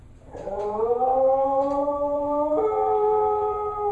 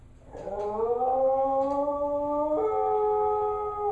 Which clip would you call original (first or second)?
second